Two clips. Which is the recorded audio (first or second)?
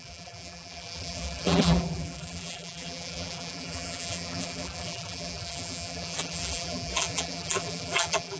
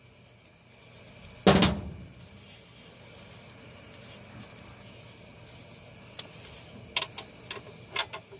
second